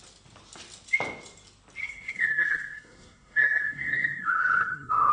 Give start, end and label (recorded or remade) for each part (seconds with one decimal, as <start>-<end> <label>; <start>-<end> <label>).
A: 0.0-1.8 recorded; 1.8-5.1 remade